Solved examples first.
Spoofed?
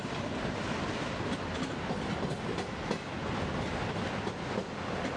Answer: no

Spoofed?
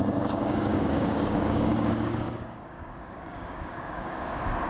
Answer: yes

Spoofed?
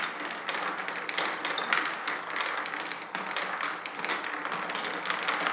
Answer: no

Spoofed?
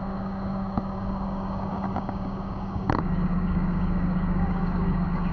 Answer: yes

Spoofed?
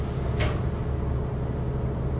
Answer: no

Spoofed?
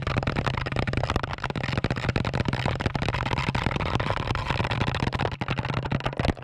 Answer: no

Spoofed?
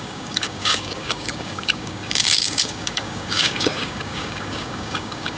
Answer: yes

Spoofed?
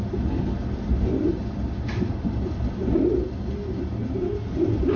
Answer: no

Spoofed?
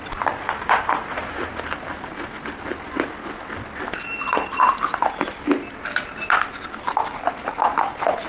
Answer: no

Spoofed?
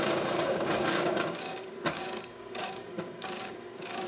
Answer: yes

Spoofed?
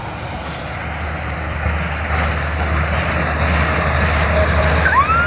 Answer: no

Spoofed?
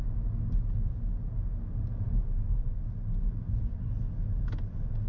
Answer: no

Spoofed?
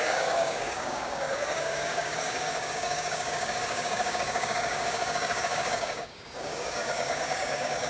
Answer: yes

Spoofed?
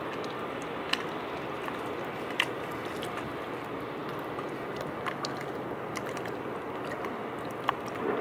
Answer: no